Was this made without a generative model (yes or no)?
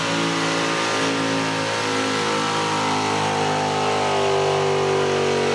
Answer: yes